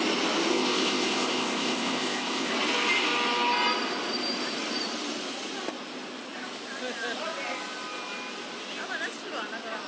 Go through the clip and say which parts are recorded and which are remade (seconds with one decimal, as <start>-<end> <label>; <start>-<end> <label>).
0.0-0.5 recorded; 0.5-2.5 remade; 2.5-9.9 recorded